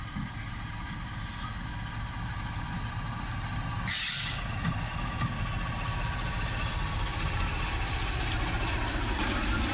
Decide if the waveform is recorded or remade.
recorded